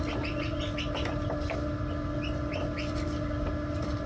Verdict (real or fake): real